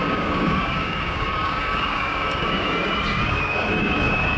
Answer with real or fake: fake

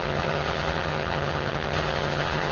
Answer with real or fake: fake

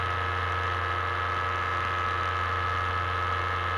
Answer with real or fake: real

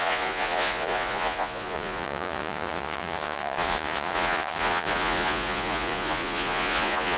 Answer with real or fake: fake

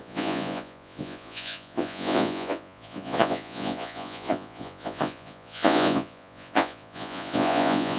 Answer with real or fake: fake